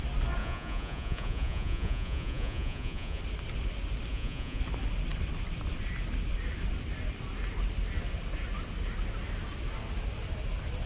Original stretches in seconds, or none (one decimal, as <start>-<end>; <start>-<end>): 0.0-0.4; 3.2-4.1; 4.6-10.9